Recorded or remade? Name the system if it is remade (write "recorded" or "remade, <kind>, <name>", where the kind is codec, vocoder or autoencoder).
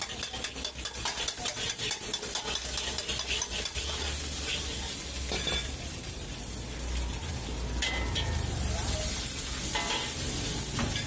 recorded